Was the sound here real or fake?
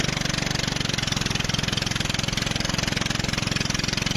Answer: real